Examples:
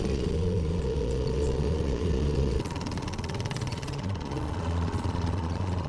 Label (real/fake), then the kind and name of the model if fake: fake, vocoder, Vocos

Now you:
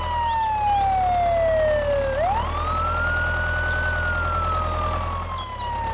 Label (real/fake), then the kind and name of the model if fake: real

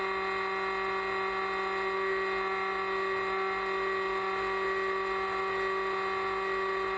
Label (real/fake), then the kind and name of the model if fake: real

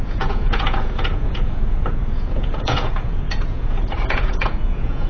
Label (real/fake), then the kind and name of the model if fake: fake, vocoder, Vocos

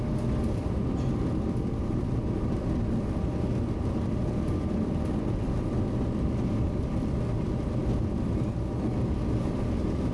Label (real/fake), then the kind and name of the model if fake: real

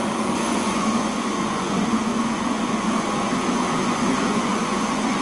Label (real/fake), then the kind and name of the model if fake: fake, vocoder, Vocos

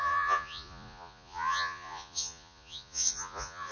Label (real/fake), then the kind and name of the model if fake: fake, vocoder, Vocos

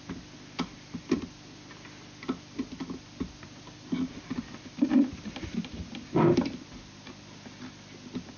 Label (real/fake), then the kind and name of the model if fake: real